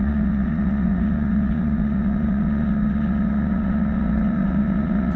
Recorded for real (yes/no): no